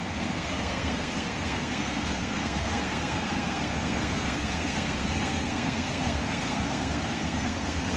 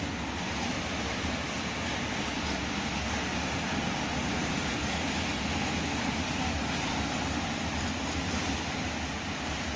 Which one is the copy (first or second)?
first